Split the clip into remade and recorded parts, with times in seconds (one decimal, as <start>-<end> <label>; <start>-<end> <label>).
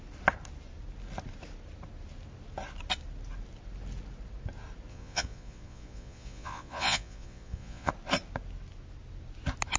0.0-4.9 recorded; 4.9-7.9 remade; 7.9-9.8 recorded